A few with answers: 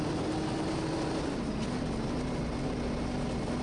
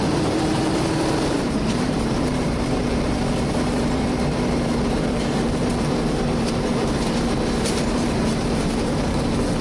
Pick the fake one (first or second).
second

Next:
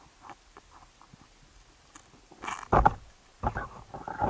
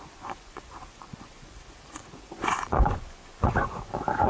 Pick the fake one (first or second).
second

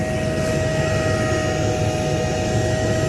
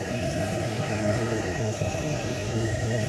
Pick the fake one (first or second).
second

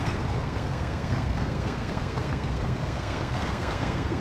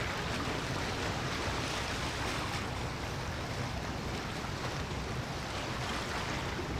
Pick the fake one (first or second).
first